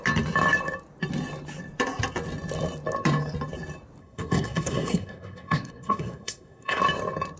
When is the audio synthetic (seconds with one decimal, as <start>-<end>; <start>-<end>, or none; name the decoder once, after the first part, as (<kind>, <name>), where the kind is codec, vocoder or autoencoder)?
4.0-6.8 (codec, SNAC)